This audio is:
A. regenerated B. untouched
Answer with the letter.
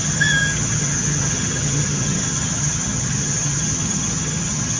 A